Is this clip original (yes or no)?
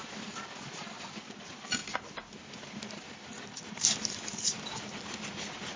yes